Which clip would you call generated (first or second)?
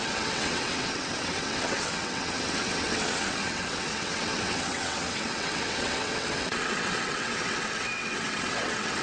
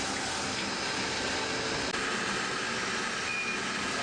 first